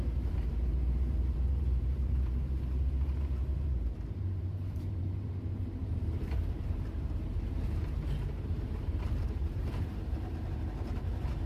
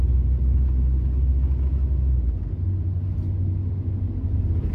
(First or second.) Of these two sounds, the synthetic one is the first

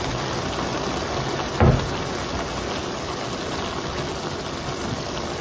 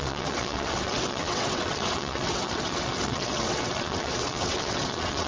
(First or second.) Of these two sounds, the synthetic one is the second